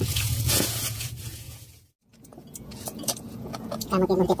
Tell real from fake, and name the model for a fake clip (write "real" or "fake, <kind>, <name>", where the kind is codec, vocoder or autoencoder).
fake, vocoder, Vocos